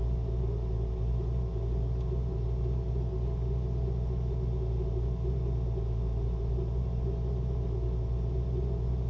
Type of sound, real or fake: real